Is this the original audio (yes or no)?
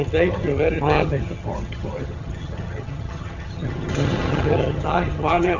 no